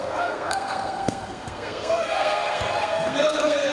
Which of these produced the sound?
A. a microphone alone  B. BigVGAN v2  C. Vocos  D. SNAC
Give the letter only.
D